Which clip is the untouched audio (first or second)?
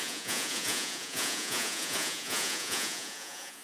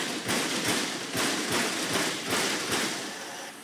second